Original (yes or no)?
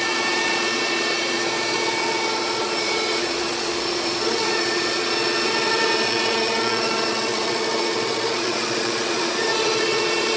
no